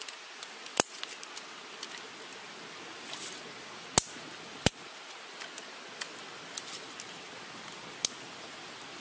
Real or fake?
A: real